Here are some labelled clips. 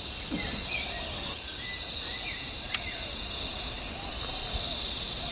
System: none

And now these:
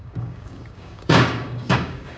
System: codec, DAC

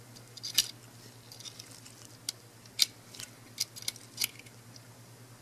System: none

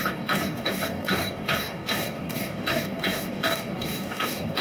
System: codec, DAC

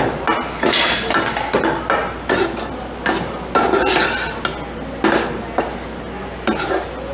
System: none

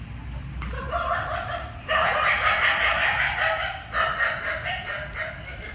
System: none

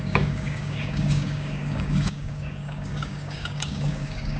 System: codec, DAC